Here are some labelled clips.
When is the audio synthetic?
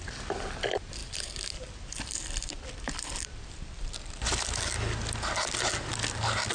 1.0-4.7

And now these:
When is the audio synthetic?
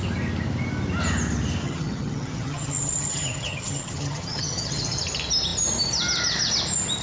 1.6-5.0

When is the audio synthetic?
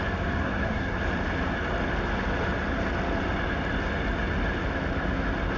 0.4-1.0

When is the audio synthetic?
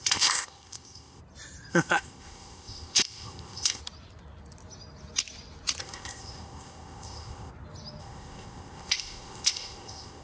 0.0-1.2; 1.7-3.8; 5.8-7.5; 8.0-10.2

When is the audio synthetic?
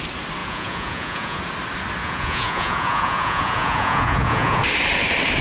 0.4-1.4; 2.0-4.6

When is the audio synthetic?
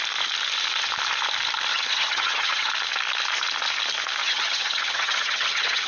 1.7-2.7; 4.2-5.9